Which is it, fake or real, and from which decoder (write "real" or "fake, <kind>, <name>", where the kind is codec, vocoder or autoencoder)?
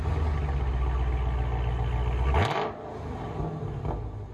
real